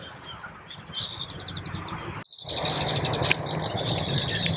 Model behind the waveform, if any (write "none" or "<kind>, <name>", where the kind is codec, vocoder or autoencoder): none